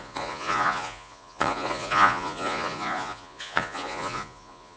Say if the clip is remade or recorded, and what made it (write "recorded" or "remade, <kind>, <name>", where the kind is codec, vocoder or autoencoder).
remade, vocoder, Vocos